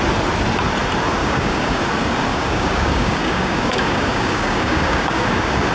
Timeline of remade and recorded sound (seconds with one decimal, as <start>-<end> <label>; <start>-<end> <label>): 0.0-1.2 recorded; 1.2-1.8 remade; 1.8-2.3 recorded; 2.3-5.7 remade